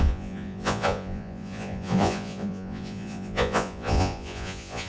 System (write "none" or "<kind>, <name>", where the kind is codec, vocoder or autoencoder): vocoder, Vocos